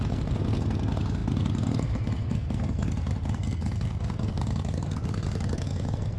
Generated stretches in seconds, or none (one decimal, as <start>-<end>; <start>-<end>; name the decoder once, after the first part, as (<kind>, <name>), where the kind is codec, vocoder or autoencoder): 0.0-6.2 (codec, SNAC)